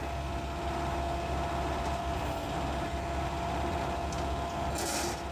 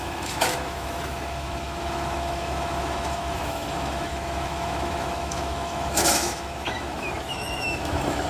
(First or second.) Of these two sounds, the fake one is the second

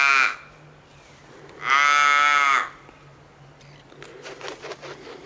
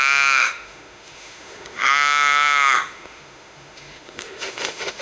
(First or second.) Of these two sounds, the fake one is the second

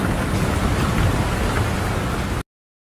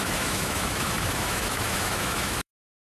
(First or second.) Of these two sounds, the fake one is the second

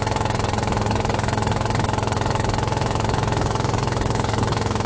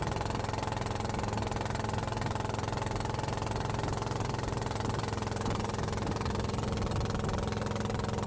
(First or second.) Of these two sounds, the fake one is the first